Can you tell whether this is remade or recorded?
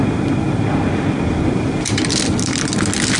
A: recorded